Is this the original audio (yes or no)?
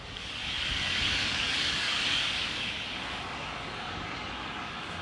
no